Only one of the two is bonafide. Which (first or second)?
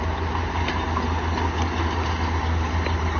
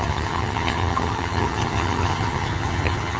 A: first